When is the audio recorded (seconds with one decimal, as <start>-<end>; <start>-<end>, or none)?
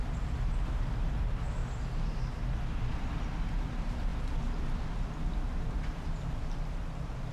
1.6-2.7; 4.1-4.6